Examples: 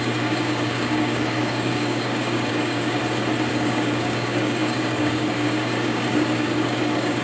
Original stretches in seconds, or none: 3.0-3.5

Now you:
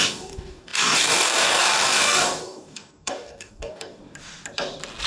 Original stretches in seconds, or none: 4.0-5.1

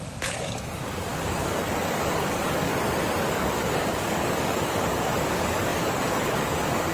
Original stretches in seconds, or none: 2.7-3.3

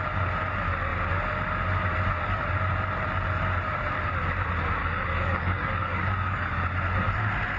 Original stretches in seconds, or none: 0.0-4.8; 6.5-7.6

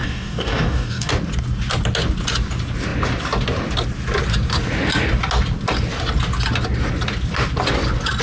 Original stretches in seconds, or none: 1.1-8.2